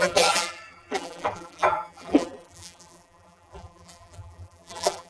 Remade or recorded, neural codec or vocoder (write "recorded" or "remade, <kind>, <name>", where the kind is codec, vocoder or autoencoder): remade, vocoder, BigVGAN v2